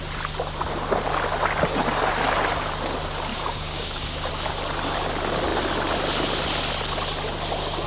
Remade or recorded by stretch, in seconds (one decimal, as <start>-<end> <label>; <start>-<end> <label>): 0.0-3.3 recorded; 3.3-4.3 remade; 4.3-7.9 recorded